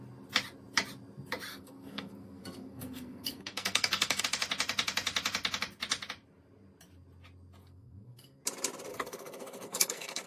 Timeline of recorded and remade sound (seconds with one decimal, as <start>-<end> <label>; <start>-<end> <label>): 0.0-1.5 recorded; 1.5-4.2 remade; 4.2-7.6 recorded; 7.6-8.4 remade; 8.4-8.9 recorded; 8.9-10.3 remade